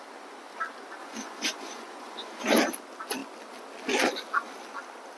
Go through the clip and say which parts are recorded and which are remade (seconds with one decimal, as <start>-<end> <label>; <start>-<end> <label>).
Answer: 0.0-1.0 recorded; 1.0-2.5 remade; 2.5-5.2 recorded